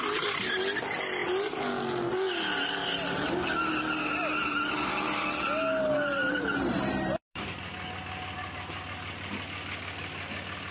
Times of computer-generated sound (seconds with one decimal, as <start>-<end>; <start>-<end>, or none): 6.2-7.6